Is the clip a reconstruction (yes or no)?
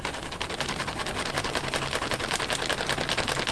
no